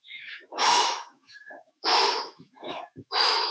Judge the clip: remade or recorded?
remade